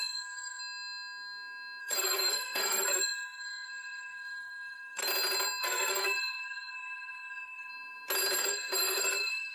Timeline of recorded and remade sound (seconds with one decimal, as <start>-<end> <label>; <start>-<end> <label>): 0.0-0.6 remade; 0.6-1.8 recorded; 1.8-5.0 remade; 5.0-5.6 recorded; 5.6-7.7 remade; 7.7-8.4 recorded; 8.4-9.5 remade